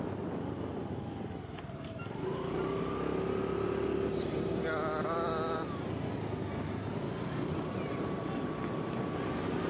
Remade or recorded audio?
recorded